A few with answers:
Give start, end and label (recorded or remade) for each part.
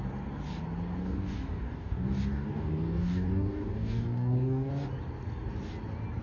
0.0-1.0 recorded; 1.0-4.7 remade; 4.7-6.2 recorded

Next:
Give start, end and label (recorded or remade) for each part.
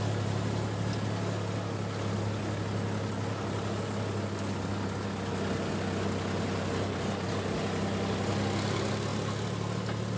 0.0-10.2 recorded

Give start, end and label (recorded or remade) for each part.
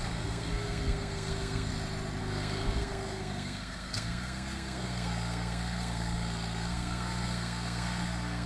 0.0-1.7 remade; 1.7-2.2 recorded; 2.2-8.5 remade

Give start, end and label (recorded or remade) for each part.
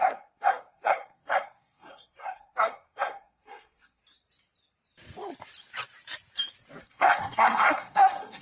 0.0-4.0 remade; 4.0-6.8 recorded; 6.8-8.4 remade